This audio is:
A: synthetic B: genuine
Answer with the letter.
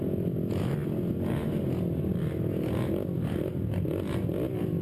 B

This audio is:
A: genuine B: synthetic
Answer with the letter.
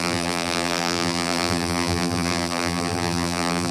B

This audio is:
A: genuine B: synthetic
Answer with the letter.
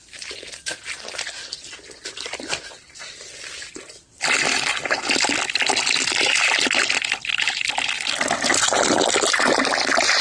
A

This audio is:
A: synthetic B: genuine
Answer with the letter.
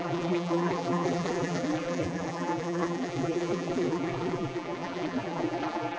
A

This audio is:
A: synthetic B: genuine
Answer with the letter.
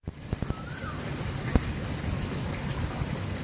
B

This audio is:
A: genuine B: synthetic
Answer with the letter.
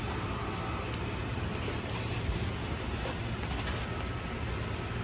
A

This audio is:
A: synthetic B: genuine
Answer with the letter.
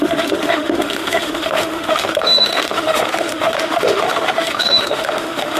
A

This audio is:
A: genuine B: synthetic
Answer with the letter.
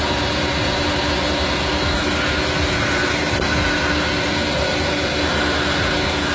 A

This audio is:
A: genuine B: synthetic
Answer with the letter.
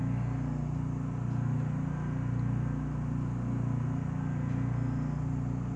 A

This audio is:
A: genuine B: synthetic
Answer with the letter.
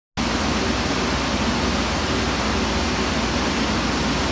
A